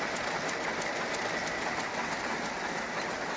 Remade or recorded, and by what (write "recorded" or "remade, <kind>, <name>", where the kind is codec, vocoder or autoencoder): recorded